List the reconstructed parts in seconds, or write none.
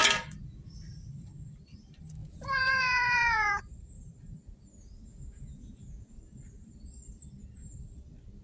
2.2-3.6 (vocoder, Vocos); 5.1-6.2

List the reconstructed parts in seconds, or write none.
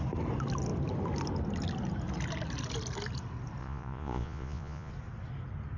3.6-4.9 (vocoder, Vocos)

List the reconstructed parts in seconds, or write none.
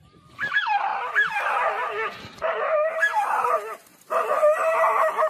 none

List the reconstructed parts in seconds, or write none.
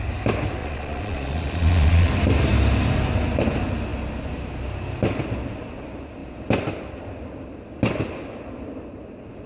0.6-2.1 (vocoder, Vocos)